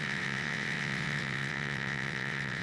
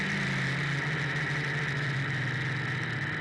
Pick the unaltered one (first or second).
second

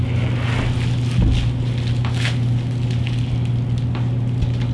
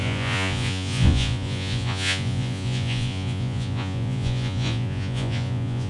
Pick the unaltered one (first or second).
first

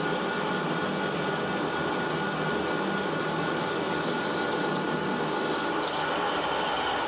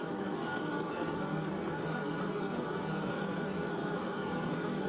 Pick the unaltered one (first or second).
first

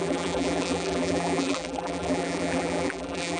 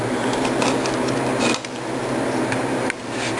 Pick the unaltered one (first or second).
second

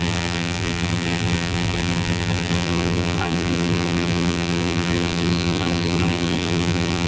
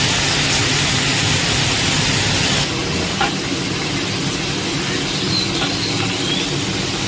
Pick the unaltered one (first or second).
second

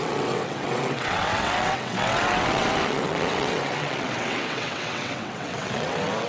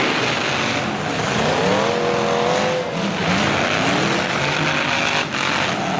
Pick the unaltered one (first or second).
second